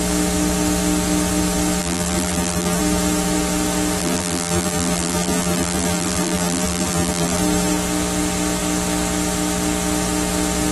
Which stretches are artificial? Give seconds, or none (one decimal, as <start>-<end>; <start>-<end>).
1.8-2.8; 4.0-7.4